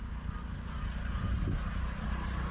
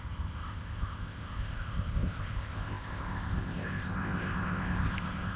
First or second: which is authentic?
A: first